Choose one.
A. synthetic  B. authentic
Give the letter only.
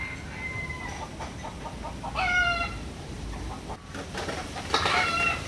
A